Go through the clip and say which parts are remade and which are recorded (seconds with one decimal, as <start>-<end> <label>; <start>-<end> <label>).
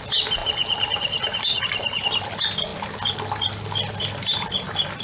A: 0.0-5.0 recorded